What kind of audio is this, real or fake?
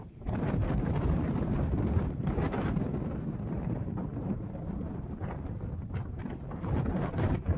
fake